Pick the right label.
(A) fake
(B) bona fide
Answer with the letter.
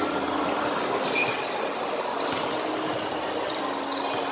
B